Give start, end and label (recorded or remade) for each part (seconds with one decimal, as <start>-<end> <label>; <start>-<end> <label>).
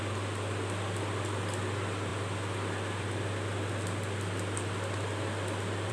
0.0-5.9 recorded